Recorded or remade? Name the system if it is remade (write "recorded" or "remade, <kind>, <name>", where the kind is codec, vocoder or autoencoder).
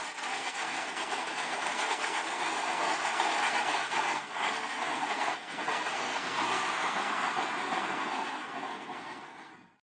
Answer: remade, codec, SNAC